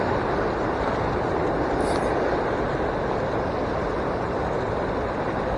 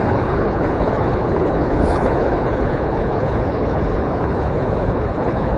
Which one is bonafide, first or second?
first